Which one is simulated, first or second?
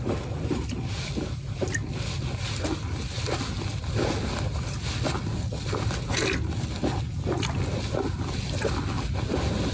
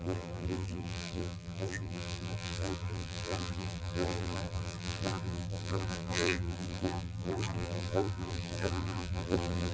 second